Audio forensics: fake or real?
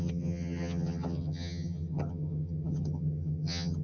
fake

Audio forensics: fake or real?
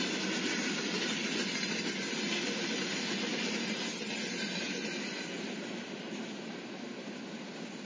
real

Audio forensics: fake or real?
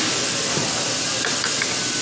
real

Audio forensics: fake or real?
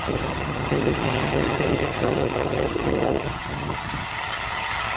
fake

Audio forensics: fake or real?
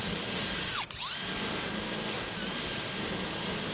real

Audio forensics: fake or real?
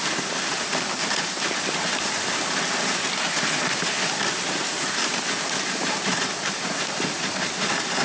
real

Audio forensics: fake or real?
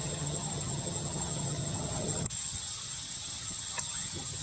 fake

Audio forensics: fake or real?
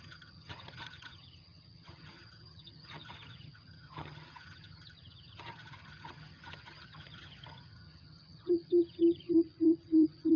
fake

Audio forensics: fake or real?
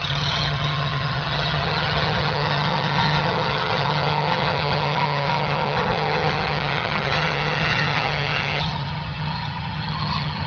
fake